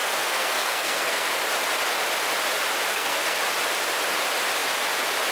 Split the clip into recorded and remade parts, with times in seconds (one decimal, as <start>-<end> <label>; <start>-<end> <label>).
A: 0.0-1.3 remade; 1.3-2.9 recorded; 2.9-3.4 remade; 3.4-5.3 recorded